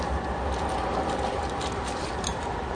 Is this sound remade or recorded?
remade